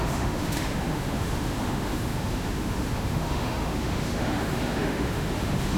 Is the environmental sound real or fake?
fake